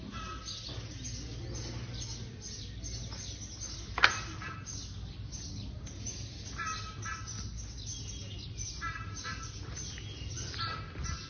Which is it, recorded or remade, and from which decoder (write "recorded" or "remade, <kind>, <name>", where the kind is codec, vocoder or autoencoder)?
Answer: recorded